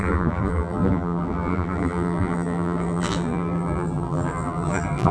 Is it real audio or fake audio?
fake